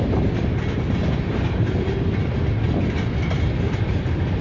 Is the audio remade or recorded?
recorded